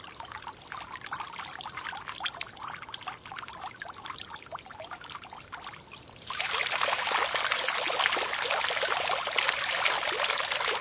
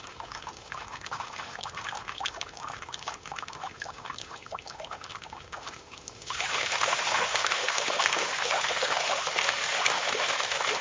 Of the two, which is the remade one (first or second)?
second